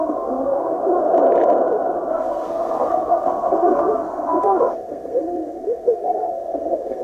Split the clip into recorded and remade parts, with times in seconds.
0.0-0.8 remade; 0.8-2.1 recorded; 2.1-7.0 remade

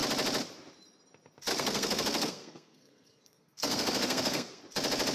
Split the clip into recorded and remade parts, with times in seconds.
0.0-1.5 recorded; 1.5-4.6 remade; 4.6-5.1 recorded